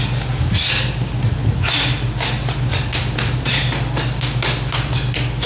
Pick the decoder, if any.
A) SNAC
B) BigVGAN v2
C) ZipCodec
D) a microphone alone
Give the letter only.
D